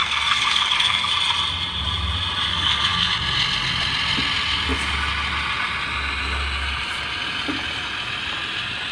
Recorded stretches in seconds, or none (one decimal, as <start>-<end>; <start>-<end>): 1.1-2.5; 3.1-8.9